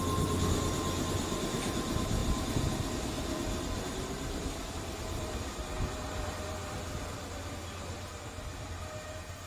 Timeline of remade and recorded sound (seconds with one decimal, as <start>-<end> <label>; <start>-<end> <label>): 0.0-9.5 recorded